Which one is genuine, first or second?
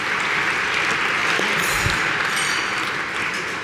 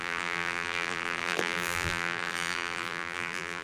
first